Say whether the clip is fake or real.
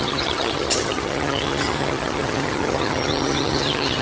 fake